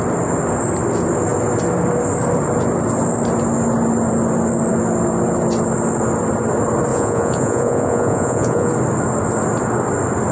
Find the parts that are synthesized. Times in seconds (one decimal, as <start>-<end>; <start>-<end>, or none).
6.9-8.7